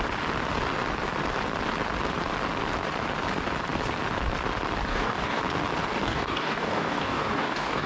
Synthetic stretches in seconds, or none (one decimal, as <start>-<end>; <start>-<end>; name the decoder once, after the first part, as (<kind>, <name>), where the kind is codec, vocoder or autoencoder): 4.9-5.4 (codec, DAC); 5.9-7.9

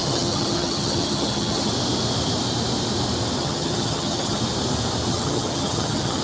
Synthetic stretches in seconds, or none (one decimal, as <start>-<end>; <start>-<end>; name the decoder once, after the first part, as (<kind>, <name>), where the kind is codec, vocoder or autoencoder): 0.0-1.7 (vocoder, HiFi-GAN); 3.4-4.4; 5.1-6.2

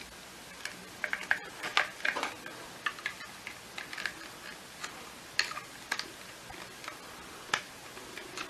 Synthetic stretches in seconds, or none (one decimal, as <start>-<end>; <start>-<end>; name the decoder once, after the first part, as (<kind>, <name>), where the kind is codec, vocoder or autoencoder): none

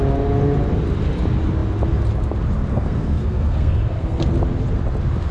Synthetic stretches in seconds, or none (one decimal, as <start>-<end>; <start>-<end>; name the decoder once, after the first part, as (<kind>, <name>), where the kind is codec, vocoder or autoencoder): 2.7-4.3 (codec, SNAC)

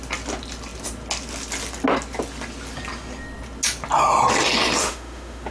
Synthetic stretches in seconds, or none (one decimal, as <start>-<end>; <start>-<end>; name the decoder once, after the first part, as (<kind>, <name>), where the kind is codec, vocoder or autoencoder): 4.8-5.5 (autoencoder, DAC-VAE)

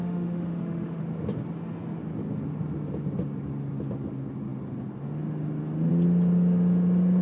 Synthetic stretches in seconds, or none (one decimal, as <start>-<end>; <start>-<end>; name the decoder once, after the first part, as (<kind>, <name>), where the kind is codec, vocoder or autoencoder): 0.0-1.0 (autoencoder, DAC-VAE)

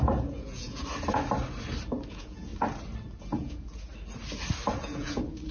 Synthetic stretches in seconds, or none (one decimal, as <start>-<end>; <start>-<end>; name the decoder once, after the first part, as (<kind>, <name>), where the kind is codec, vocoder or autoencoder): 0.0-0.8 (vocoder, Vocos); 2.1-2.5; 3.2-3.9; 4.8-5.5